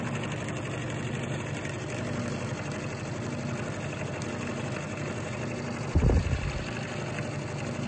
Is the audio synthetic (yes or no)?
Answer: no